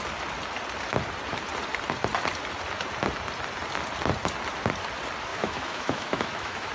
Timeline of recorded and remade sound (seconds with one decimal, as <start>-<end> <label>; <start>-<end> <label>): 0.0-5.3 recorded; 5.3-6.7 remade